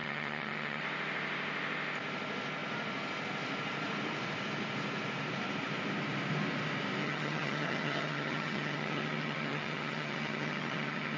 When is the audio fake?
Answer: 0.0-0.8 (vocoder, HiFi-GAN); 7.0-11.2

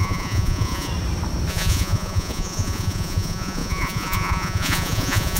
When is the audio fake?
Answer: 0.0-0.9 (vocoder, Vocos); 1.5-5.4

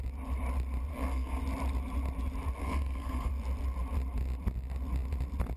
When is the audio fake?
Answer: 0.9-1.4 (codec, SNAC); 2.6-3.3